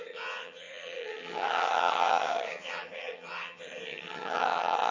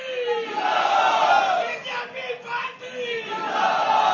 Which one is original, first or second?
second